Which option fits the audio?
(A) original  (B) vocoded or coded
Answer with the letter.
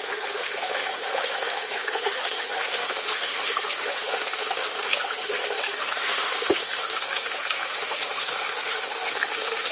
B